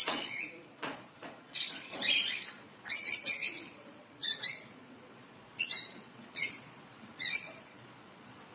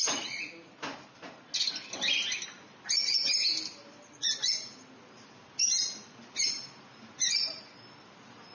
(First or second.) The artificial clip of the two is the first